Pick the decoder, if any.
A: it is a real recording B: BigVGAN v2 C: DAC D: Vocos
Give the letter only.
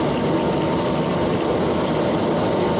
A